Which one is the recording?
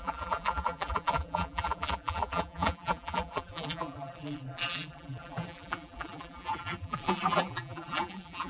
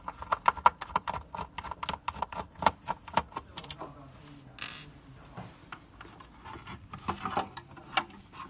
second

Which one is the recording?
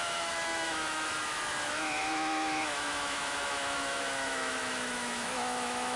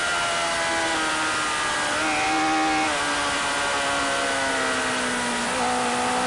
second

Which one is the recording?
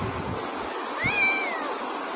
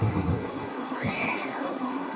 first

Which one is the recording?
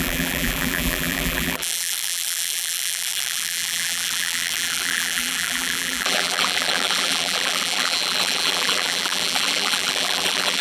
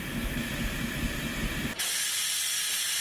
second